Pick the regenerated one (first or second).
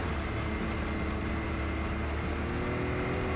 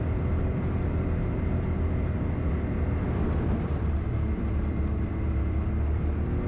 second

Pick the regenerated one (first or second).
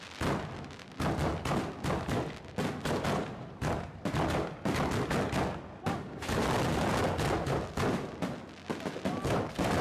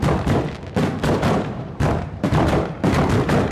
second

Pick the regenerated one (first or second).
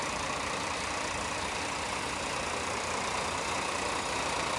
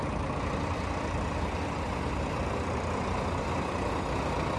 first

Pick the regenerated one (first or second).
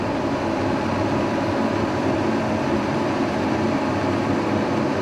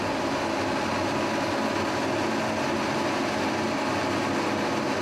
first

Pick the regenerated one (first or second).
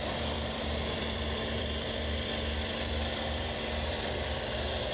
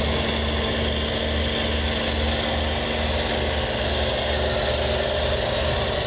first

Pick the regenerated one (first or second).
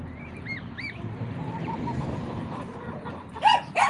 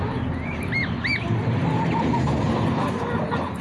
first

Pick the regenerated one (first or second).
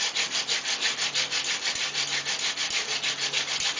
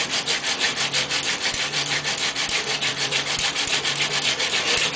second